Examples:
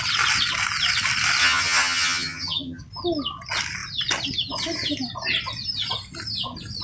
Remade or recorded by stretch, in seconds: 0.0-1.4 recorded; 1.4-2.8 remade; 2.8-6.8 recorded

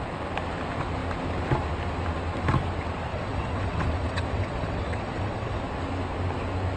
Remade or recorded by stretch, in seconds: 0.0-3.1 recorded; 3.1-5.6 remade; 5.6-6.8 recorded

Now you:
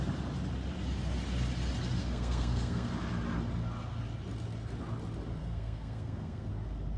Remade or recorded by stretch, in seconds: 0.0-2.0 recorded; 2.0-2.9 remade; 2.9-5.4 recorded; 5.4-6.5 remade; 6.5-7.0 recorded

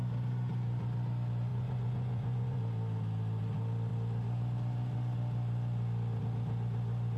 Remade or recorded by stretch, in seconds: 0.0-1.5 recorded; 1.5-2.6 remade; 2.6-7.2 recorded

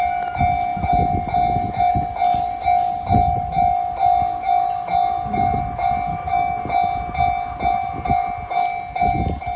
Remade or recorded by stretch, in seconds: 0.0-6.1 recorded; 6.1-6.6 remade; 6.6-9.6 recorded

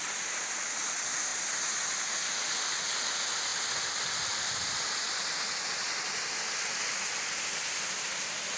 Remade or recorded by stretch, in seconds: 0.0-8.6 recorded